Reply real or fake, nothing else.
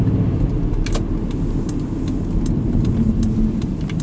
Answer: real